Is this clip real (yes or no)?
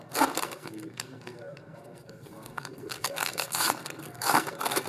no